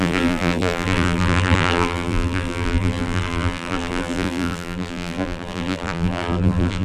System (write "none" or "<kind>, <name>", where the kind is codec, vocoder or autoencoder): vocoder, BigVGAN v2